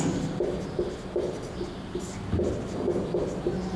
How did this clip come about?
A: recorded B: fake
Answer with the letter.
A